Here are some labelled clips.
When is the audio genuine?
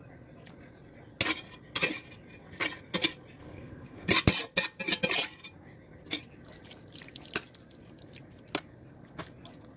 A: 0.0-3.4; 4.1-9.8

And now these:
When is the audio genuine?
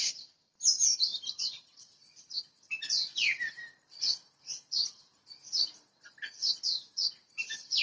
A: none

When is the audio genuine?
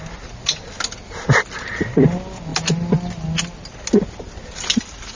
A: 0.0-5.2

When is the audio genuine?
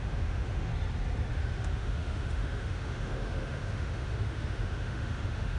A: 0.7-1.3